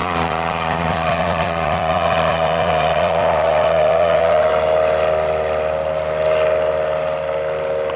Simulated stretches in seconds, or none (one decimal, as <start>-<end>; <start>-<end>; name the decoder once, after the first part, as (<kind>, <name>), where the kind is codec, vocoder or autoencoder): 0.0-4.5 (vocoder, Vocos)